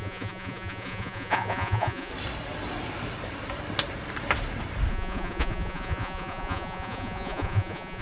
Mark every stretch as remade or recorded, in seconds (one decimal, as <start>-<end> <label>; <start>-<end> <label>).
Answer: 0.0-2.1 remade; 2.1-4.9 recorded; 4.9-8.0 remade